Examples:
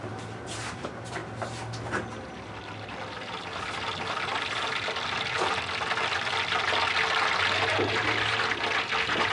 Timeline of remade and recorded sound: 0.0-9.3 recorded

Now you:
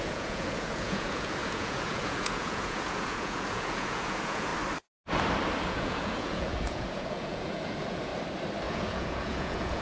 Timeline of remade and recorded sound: 0.0-4.5 remade; 4.5-5.6 recorded; 5.6-8.1 remade; 8.1-8.7 recorded; 8.7-9.8 remade